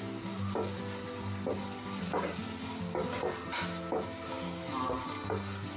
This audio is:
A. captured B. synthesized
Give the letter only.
A